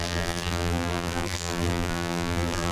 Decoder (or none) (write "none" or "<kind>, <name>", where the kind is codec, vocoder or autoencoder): vocoder, BigVGAN v2